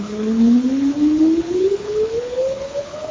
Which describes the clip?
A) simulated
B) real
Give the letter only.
A